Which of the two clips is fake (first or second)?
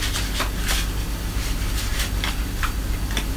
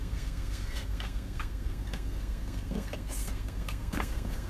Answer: second